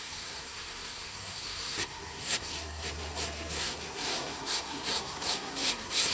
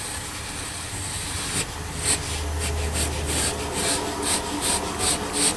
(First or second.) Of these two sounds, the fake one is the first